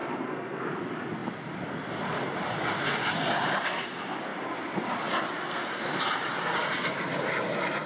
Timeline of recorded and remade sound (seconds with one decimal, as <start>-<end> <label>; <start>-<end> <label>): 0.0-0.6 remade; 0.6-5.5 recorded; 5.5-6.0 remade; 6.0-7.9 recorded